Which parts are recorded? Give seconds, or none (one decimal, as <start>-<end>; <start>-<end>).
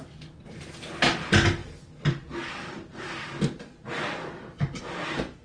0.0-5.4